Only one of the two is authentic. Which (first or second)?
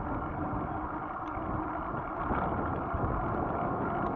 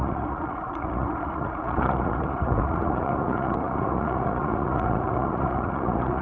first